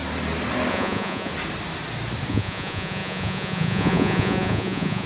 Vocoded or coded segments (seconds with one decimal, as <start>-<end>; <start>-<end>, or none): 0.7-1.3; 2.3-5.1